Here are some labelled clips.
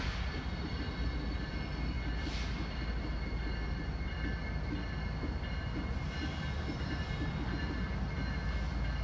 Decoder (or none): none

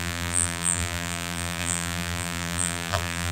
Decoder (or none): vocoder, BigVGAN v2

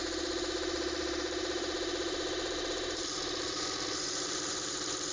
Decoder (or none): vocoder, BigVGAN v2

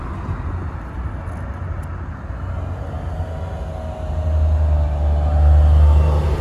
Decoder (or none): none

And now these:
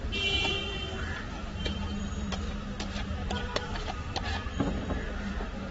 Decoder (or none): vocoder, BigVGAN v2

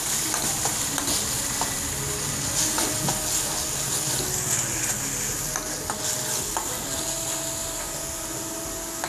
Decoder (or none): none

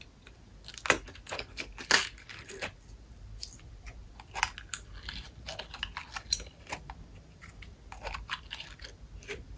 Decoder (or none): none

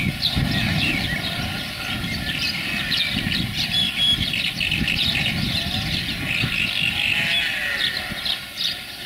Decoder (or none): none